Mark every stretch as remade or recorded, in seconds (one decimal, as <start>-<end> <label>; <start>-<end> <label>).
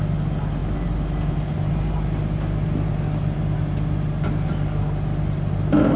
0.0-6.0 recorded